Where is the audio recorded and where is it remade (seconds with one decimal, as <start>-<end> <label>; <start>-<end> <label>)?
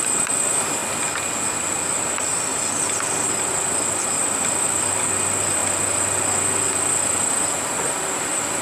0.0-0.8 remade; 0.8-1.7 recorded; 1.7-2.5 remade; 2.5-4.0 recorded; 4.0-5.6 remade; 5.6-7.8 recorded; 7.8-8.6 remade